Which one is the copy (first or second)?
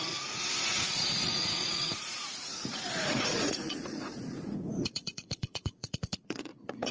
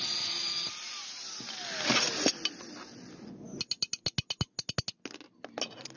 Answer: first